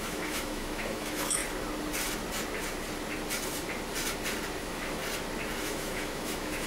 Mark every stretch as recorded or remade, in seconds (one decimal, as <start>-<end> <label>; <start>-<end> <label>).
0.0-1.4 remade; 1.4-4.6 recorded; 4.6-5.0 remade; 5.0-5.6 recorded; 5.6-6.7 remade